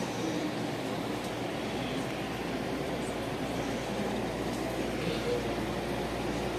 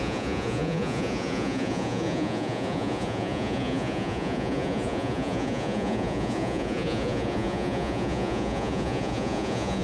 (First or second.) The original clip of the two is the first